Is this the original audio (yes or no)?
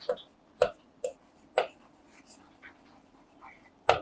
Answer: yes